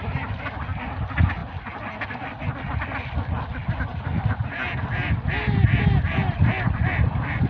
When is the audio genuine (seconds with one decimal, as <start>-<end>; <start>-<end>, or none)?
0.0-7.5